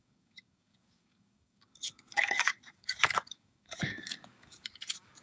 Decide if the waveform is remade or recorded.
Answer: remade